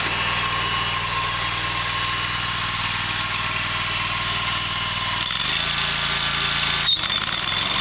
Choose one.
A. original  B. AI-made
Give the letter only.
A